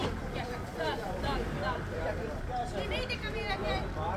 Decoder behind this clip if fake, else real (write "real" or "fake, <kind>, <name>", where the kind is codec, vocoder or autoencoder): fake, vocoder, BigVGAN v2